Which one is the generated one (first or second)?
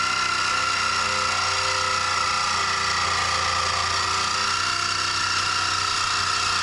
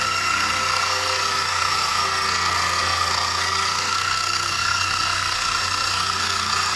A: second